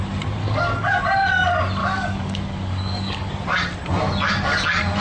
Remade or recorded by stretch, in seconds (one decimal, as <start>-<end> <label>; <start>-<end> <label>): 0.0-0.4 recorded; 0.4-1.0 remade; 1.0-1.8 recorded; 1.8-3.3 remade; 3.3-5.0 recorded